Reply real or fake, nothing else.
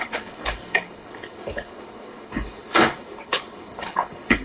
fake